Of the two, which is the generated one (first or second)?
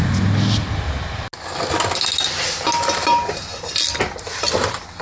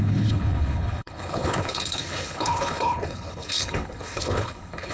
second